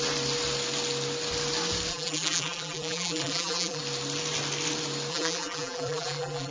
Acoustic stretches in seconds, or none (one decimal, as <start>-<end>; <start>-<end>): 0.0-1.9; 3.8-5.1